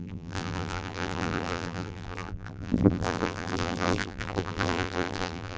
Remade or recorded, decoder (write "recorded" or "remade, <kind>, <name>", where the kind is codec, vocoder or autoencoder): remade, vocoder, BigVGAN v2